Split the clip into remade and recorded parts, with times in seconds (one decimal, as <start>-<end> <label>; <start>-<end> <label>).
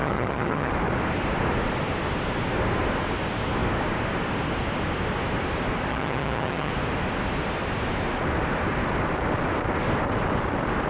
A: 0.0-0.7 remade; 0.7-5.9 recorded; 5.9-6.7 remade; 6.7-10.9 recorded